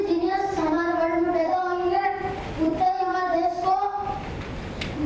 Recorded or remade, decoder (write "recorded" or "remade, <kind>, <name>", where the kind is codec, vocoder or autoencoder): recorded